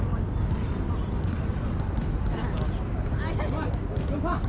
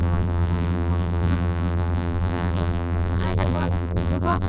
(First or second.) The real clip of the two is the first